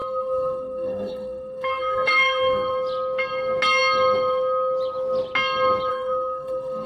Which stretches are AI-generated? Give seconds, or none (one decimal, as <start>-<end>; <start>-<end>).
0.0-2.7; 5.9-6.9